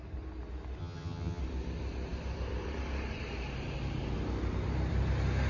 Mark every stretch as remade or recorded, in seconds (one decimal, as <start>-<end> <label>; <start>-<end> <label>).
0.0-0.8 recorded; 0.8-1.4 remade; 1.4-5.5 recorded